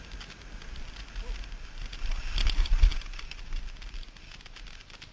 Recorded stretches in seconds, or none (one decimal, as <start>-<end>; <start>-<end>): 0.0-5.1